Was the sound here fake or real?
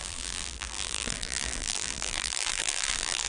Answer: fake